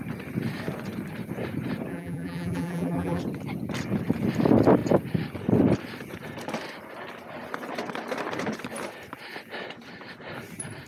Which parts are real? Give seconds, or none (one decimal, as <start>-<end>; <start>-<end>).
0.0-1.9; 3.2-10.9